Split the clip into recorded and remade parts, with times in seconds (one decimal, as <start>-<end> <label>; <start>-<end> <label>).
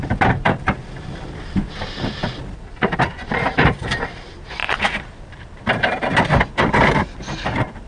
0.0-7.9 remade